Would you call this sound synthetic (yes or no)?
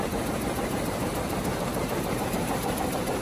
yes